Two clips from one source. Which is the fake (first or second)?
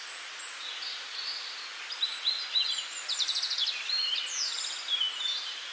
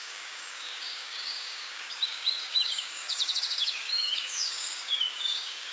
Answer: second